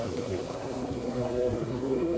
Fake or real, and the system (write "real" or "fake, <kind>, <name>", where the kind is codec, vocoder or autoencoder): fake, codec, SNAC